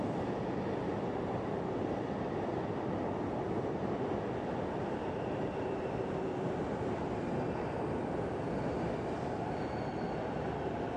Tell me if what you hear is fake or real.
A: real